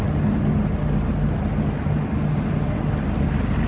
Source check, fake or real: real